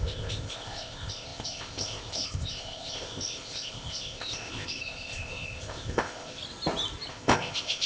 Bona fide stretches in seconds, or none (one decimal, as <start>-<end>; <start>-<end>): 6.4-7.1